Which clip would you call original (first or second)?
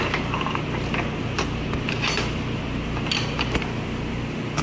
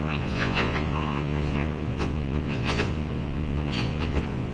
first